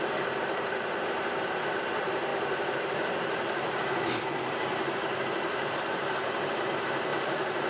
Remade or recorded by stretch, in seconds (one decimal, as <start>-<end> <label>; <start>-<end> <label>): 0.0-7.7 remade